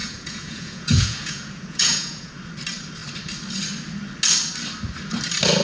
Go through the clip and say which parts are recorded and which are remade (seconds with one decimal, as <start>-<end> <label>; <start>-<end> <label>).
0.0-2.3 remade; 2.3-5.6 recorded